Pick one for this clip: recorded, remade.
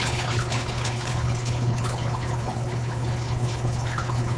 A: remade